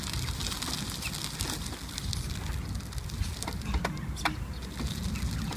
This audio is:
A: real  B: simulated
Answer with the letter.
A